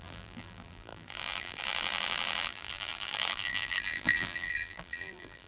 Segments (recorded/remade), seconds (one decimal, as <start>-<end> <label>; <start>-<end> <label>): 0.0-5.5 remade